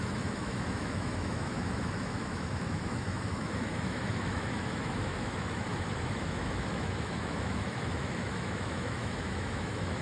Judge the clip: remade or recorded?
remade